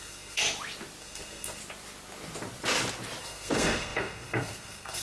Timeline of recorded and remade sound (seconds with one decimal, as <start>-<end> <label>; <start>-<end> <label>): 0.0-0.4 remade; 0.4-1.0 recorded; 1.0-1.6 remade; 1.6-3.2 recorded; 3.2-5.0 remade